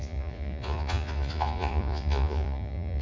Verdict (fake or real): fake